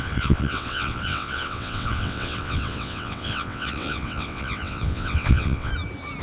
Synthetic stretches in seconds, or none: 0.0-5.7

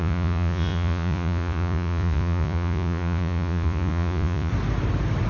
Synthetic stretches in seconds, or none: 0.0-4.5

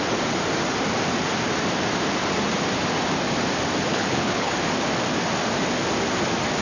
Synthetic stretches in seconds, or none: 3.9-4.5

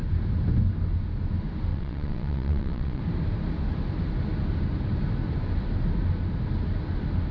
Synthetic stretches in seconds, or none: 1.7-3.0

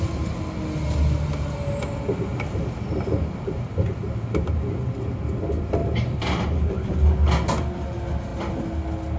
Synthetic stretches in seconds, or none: 5.8-6.9